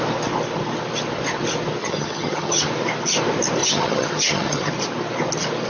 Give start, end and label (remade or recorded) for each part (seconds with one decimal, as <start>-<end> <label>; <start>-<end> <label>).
0.0-1.8 recorded; 1.8-2.7 remade; 2.7-3.6 recorded; 3.6-4.7 remade; 4.7-5.7 recorded